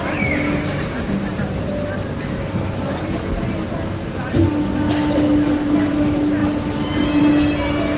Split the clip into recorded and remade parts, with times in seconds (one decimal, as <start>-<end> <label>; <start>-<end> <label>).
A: 0.0-8.0 recorded